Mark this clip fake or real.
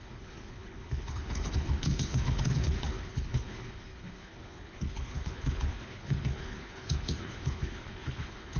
fake